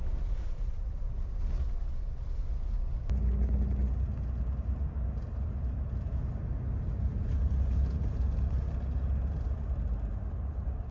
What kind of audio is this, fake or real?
real